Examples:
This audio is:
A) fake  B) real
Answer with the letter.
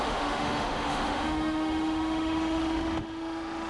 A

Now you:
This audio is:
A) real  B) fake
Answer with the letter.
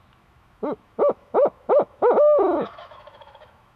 B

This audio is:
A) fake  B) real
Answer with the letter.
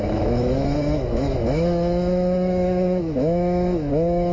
A